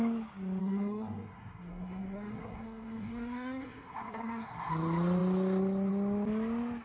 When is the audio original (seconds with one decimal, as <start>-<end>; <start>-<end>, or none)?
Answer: 0.0-0.6; 4.7-6.8